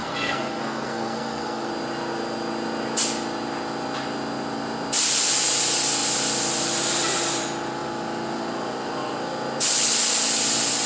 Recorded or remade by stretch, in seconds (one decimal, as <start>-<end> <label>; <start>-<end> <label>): 0.0-1.7 remade; 1.7-10.9 recorded